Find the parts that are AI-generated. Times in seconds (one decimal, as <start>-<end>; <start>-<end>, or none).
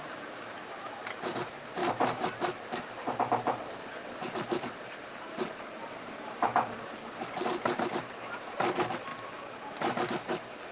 0.0-4.0; 4.8-9.1